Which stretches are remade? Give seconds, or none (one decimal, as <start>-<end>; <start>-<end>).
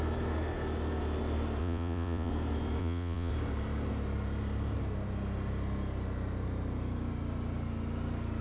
1.6-2.3; 2.8-3.3